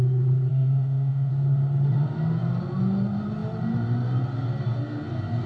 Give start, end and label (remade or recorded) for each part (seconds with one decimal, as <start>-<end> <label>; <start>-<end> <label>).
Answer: 0.0-0.5 recorded; 0.5-1.3 remade; 1.3-5.5 recorded